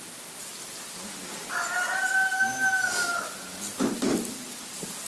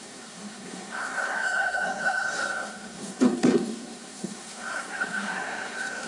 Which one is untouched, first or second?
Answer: first